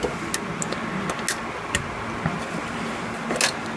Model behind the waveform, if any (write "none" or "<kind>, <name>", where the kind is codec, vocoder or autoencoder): none